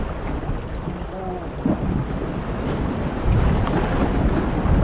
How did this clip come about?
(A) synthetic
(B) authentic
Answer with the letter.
B